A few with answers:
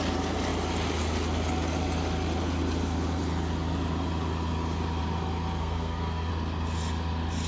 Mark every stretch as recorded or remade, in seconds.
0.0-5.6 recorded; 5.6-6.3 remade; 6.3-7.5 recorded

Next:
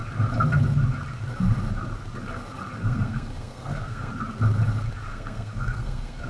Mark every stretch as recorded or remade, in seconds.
0.0-2.8 recorded; 2.8-4.1 remade; 4.1-5.1 recorded; 5.1-6.3 remade